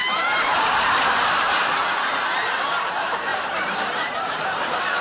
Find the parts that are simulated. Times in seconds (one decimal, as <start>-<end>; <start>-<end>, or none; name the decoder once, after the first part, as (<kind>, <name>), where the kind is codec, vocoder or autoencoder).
0.0-5.0 (vocoder, BigVGAN v2)